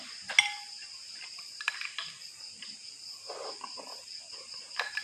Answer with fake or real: real